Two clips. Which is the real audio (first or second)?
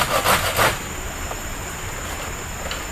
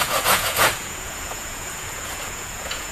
first